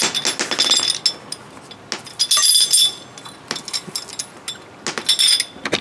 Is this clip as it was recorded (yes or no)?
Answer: yes